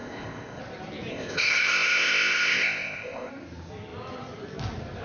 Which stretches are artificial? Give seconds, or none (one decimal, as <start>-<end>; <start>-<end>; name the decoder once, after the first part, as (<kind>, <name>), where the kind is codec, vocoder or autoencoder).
0.0-0.6 (codec, ZipCodec); 1.1-3.3